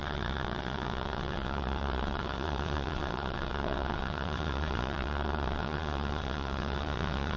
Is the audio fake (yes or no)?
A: yes